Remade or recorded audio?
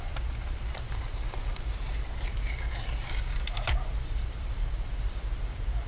remade